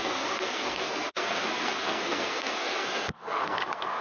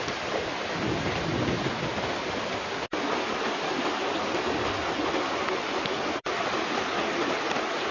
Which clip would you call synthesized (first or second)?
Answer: first